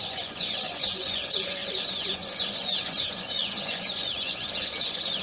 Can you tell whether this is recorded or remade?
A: remade